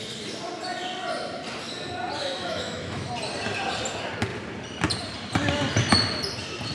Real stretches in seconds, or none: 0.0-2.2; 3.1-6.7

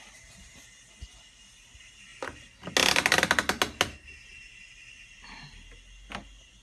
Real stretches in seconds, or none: 0.0-6.6

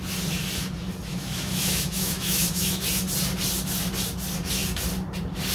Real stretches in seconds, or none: 0.0-1.1; 2.8-5.5

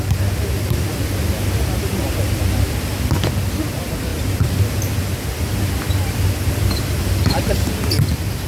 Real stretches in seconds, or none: 0.0-8.5

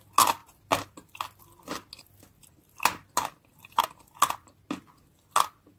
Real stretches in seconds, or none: 0.0-5.8

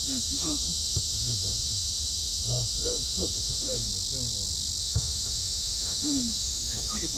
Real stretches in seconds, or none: 3.9-4.8

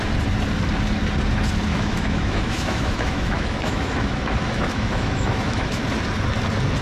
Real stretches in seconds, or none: 0.0-1.7; 5.8-6.8